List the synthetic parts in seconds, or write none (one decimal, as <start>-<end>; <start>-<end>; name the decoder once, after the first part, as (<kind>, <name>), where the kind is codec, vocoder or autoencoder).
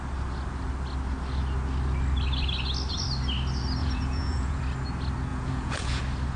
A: 3.8-4.6 (vocoder, Vocos); 5.3-6.0